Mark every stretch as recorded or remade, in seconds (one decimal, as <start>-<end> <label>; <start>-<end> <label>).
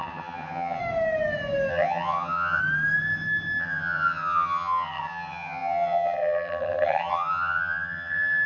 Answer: 0.0-0.8 remade; 0.8-1.7 recorded; 1.7-2.6 remade; 2.6-3.6 recorded; 3.6-8.5 remade